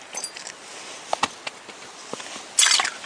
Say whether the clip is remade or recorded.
recorded